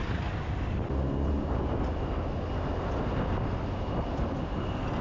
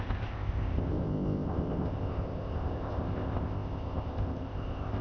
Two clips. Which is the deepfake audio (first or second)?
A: second